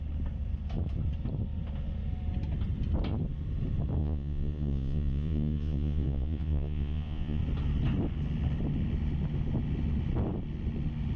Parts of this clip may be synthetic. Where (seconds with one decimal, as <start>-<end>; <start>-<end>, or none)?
4.0-7.4